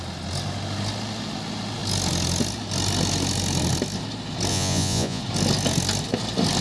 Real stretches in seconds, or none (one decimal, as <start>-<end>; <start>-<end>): 0.0-4.5; 5.2-6.6